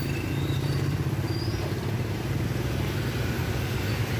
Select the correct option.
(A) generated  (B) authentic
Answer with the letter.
B